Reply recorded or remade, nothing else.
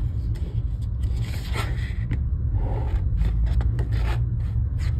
recorded